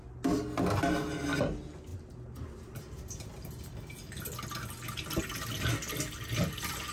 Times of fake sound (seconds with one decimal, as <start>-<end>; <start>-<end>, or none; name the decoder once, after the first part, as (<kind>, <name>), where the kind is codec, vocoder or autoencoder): none